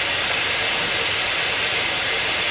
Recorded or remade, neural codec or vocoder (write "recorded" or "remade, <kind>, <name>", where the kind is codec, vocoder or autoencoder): recorded